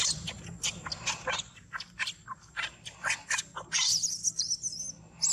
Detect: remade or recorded recorded